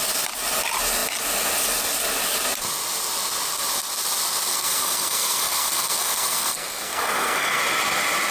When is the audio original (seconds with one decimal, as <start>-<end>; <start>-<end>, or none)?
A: 0.0-4.5; 7.6-8.3